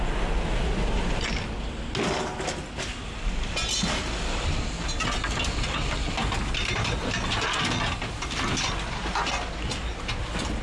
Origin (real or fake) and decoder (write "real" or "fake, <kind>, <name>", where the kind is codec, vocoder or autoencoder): real